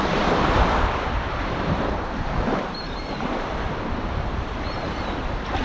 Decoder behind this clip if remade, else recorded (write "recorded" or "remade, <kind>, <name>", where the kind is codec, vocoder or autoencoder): remade, vocoder, BigVGAN v2